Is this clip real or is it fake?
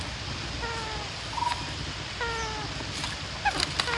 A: real